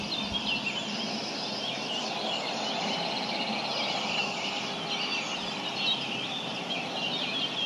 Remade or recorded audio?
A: recorded